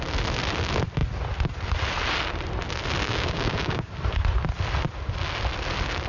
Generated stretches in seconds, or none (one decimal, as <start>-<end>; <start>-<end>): 3.0-3.9